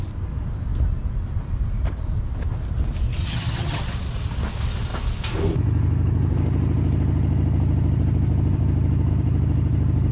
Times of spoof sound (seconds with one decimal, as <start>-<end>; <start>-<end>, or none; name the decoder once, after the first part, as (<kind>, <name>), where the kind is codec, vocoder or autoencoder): 3.2-3.8 (vocoder, HiFi-GAN)